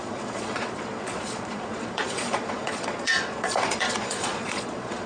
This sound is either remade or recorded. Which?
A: remade